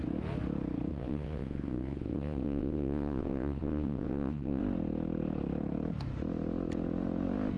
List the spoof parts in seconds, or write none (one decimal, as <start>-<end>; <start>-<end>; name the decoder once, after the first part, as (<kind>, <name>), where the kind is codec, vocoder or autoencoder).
0.9-4.6 (vocoder, Vocos)